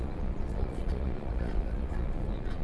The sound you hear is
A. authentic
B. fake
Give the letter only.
B